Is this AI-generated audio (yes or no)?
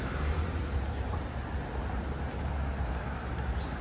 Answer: no